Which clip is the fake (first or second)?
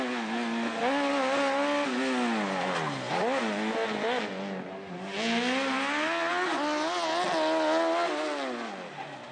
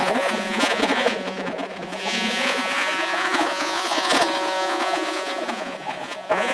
second